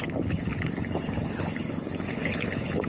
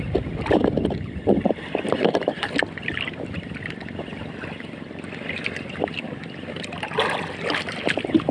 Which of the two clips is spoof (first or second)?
first